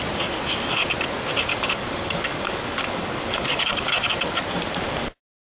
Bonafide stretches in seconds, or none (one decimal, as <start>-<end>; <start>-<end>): 0.0-1.5; 3.9-5.5